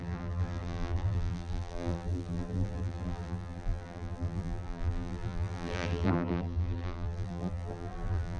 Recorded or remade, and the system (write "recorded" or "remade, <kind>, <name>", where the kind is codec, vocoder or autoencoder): remade, vocoder, BigVGAN v2